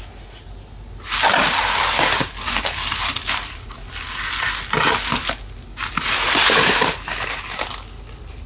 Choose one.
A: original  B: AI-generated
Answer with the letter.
A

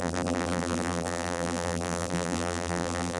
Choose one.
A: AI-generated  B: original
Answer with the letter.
A